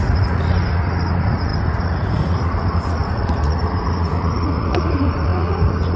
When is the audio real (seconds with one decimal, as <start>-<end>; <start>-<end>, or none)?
none